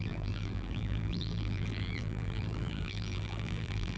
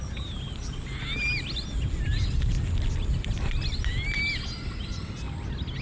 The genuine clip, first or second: second